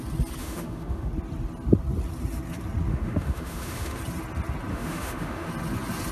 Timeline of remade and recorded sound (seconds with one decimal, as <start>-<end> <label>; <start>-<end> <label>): 0.0-0.4 recorded; 0.4-1.1 remade; 1.1-2.9 recorded; 2.9-4.0 remade; 4.0-4.7 recorded; 4.7-5.5 remade; 5.5-6.1 recorded